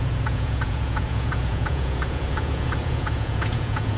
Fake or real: fake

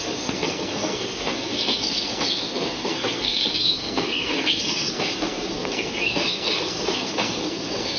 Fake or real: fake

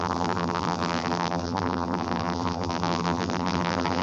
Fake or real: fake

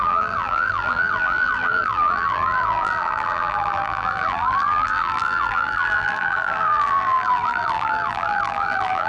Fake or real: fake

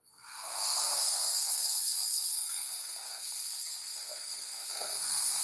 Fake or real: fake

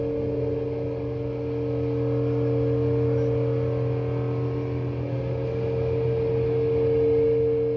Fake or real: real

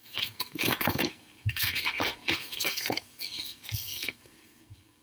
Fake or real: fake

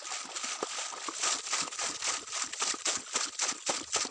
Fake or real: real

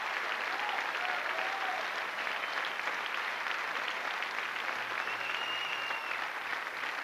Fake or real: real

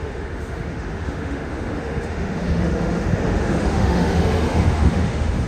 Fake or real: fake